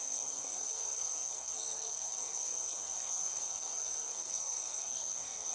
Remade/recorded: remade